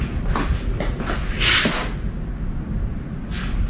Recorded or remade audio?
recorded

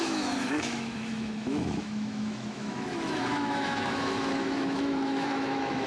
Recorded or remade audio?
remade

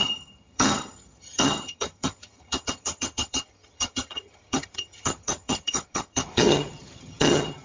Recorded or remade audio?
remade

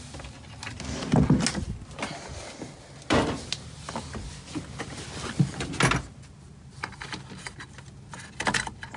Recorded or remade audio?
recorded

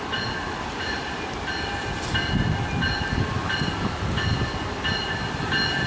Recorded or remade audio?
recorded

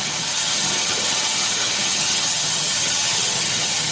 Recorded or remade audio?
remade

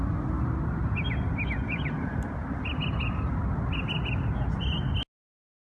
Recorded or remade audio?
recorded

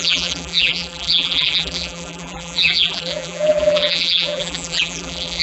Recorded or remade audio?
remade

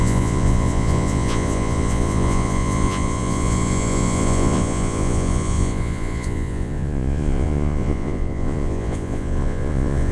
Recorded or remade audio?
remade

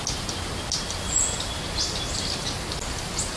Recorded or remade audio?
recorded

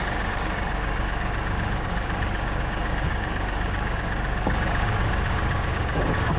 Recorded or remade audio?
remade